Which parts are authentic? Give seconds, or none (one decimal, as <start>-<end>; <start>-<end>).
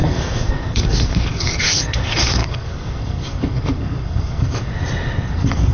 4.7-5.3